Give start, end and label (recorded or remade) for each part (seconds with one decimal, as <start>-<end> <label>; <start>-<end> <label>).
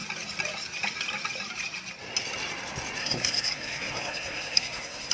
0.0-3.0 recorded; 3.0-5.1 remade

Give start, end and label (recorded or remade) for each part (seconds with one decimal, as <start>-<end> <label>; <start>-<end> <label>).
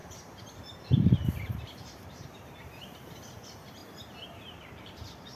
0.0-3.2 remade; 3.2-3.8 recorded; 3.8-5.4 remade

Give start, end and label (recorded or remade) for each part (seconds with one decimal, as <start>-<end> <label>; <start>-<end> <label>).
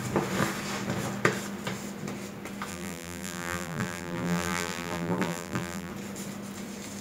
0.0-2.7 recorded; 2.7-5.9 remade; 5.9-7.0 recorded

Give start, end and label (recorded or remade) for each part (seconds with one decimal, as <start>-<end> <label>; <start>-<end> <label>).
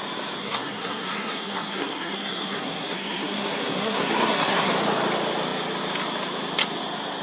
0.0-0.4 recorded; 0.4-4.7 remade; 4.7-7.2 recorded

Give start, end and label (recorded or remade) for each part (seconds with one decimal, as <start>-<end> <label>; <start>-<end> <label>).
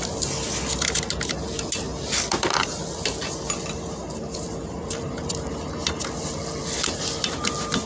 0.0-1.9 recorded; 1.9-6.6 remade; 6.6-7.9 recorded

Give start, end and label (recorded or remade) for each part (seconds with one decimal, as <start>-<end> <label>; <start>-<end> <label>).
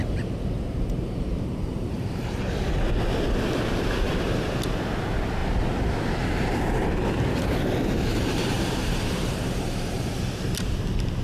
0.0-2.4 remade; 2.4-8.1 recorded; 8.1-10.2 remade; 10.2-11.2 recorded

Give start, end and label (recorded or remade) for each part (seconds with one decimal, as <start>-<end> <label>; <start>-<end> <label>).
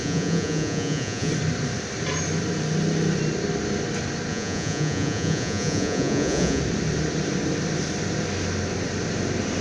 0.0-1.3 remade; 1.3-4.3 recorded; 4.3-6.6 remade; 6.6-9.6 recorded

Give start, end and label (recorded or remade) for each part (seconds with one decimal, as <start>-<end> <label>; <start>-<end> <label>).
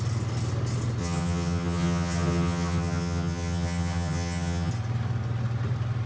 0.0-1.0 recorded; 1.0-4.7 remade; 4.7-6.1 recorded